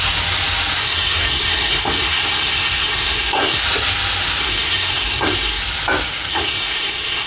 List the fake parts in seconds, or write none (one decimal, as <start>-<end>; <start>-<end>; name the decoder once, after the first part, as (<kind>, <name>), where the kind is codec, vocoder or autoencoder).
0.8-3.6 (codec, SNAC); 4.4-5.6; 6.3-7.3